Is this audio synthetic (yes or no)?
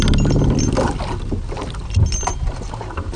no